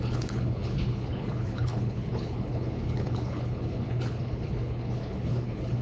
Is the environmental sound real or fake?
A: fake